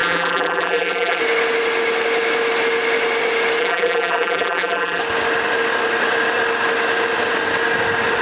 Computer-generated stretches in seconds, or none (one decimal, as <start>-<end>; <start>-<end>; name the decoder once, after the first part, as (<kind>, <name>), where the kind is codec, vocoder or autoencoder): 0.0-1.2 (vocoder, BigVGAN v2); 3.6-5.0